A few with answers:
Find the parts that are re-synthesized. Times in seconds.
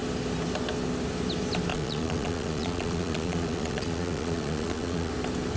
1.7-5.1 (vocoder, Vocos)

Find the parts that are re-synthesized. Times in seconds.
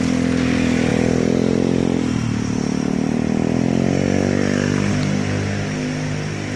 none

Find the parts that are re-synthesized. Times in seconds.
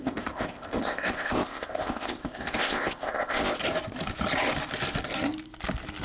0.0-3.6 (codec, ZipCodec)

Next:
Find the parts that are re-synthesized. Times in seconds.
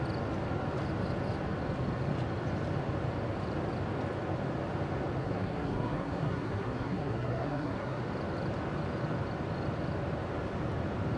5.2-8.0 (codec, SNAC)